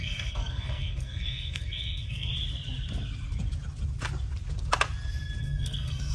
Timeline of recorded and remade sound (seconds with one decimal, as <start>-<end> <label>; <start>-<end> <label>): 0.0-2.3 remade; 2.3-5.4 recorded; 5.4-6.1 remade